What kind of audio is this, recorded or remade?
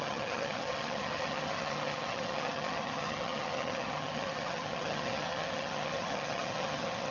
remade